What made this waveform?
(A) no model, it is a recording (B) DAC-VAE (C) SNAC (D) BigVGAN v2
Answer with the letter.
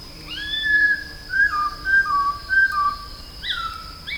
D